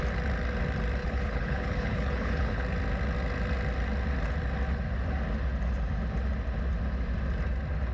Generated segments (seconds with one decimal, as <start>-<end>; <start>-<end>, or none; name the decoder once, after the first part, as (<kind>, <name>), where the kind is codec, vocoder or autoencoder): 1.0-2.6 (codec, HILCodec)